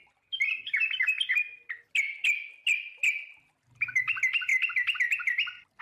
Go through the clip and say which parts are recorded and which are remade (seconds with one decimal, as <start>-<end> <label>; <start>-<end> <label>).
0.0-5.8 recorded